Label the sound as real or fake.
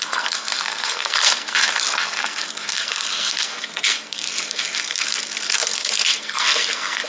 fake